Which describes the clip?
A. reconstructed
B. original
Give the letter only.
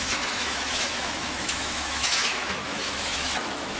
A